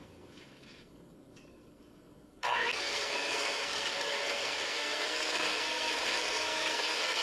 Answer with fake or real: fake